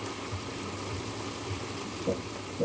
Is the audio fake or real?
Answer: real